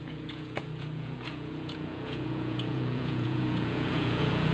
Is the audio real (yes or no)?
no